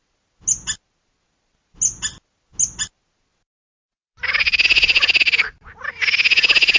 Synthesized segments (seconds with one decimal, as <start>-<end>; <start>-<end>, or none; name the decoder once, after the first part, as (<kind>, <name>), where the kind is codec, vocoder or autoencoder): none